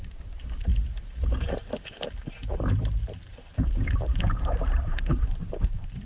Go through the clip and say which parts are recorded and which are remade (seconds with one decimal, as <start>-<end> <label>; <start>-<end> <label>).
0.0-0.7 remade; 0.7-2.3 recorded; 2.3-6.1 remade

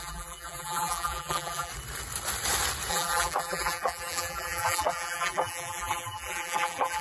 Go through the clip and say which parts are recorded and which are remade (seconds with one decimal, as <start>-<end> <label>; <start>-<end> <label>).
0.0-1.7 remade; 1.7-2.9 recorded; 2.9-7.0 remade

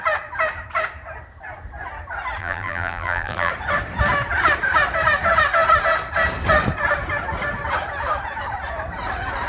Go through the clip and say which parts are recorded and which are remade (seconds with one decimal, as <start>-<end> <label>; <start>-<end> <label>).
0.0-2.4 recorded; 2.4-3.5 remade; 3.5-9.5 recorded

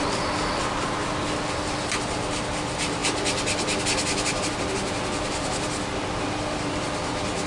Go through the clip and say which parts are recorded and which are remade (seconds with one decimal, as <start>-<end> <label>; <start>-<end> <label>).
0.0-7.5 recorded

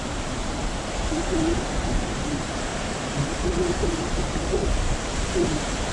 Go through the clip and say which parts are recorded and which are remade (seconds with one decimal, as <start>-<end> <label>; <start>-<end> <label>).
0.0-0.6 remade; 0.6-1.8 recorded; 1.8-2.7 remade; 2.7-3.7 recorded; 3.7-5.9 remade